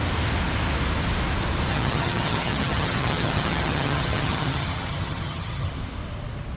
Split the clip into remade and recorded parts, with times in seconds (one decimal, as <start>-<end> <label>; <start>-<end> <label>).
0.0-1.7 recorded; 1.7-5.7 remade; 5.7-6.6 recorded